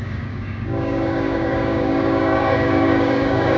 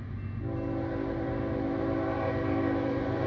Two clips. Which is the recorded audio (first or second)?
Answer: second